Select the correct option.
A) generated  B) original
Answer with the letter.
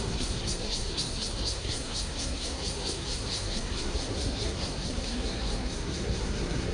A